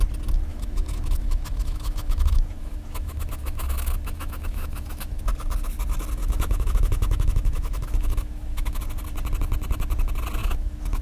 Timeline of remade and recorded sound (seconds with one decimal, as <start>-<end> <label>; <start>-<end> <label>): 0.0-0.5 recorded; 0.5-5.2 remade; 5.2-6.2 recorded; 6.2-8.8 remade; 8.8-10.4 recorded; 10.4-11.0 remade